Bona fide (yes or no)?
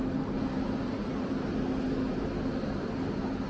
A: yes